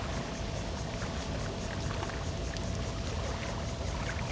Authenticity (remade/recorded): recorded